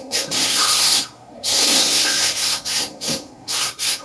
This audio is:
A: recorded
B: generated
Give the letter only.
B